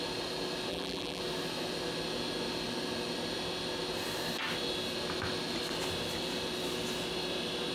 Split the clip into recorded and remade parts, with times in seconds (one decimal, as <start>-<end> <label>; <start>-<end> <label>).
0.0-0.7 recorded; 0.7-1.2 remade; 1.2-7.7 recorded